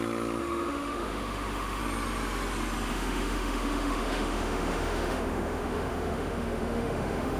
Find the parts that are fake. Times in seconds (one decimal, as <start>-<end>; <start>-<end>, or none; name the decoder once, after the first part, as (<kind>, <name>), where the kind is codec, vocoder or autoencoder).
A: 0.4-1.8 (autoencoder, DAC-VAE); 2.9-7.4